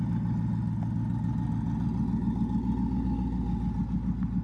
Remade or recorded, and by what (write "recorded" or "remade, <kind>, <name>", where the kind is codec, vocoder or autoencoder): recorded